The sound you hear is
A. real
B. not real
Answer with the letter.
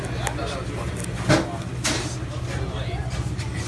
A